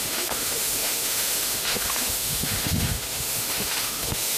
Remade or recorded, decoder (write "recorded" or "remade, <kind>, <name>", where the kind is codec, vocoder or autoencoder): remade, autoencoder, DAC-VAE